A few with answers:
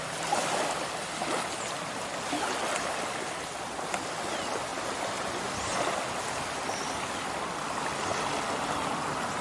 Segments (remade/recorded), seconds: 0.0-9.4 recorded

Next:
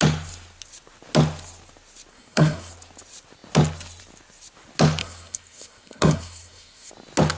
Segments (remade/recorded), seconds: 0.0-2.1 recorded; 2.1-2.7 remade; 2.7-5.0 recorded; 5.0-6.9 remade; 6.9-7.4 recorded

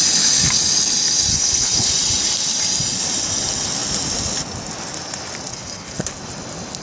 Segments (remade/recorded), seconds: 0.0-1.3 recorded; 1.3-1.9 remade; 1.9-5.5 recorded; 5.5-6.0 remade; 6.0-6.8 recorded

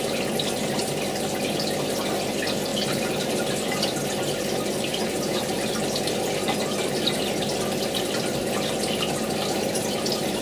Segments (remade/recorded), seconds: 0.0-2.7 recorded; 2.7-3.4 remade; 3.4-4.9 recorded; 4.9-5.5 remade; 5.5-10.4 recorded

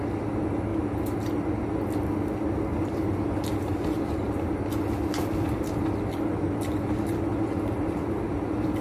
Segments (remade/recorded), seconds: 0.0-8.8 recorded

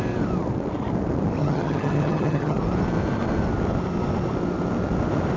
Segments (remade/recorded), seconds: 0.0-1.4 recorded; 1.4-2.6 remade; 2.6-5.4 recorded

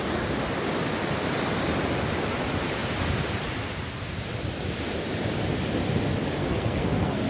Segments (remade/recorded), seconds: 0.0-6.4 recorded; 6.4-7.3 remade